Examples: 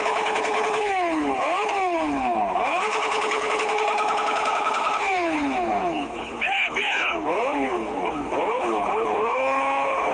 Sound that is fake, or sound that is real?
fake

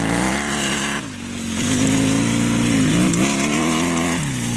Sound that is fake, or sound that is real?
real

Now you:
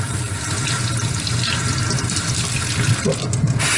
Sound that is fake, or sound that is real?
fake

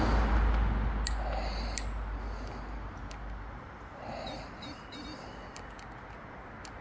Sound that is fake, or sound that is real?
real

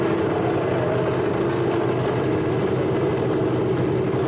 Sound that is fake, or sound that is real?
real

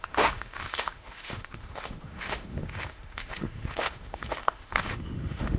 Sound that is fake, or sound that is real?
fake